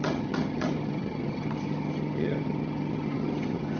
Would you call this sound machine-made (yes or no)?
yes